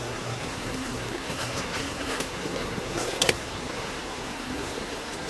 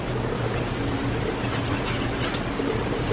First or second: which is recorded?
second